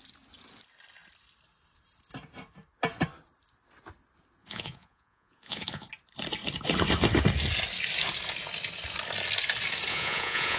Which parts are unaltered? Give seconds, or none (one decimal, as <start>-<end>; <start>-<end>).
0.0-4.4; 5.9-9.9